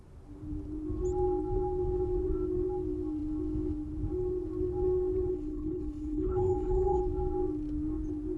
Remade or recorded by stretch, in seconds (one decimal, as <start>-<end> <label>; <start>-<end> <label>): 0.0-5.3 recorded; 5.3-7.0 remade; 7.0-8.4 recorded